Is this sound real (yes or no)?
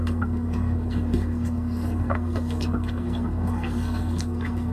no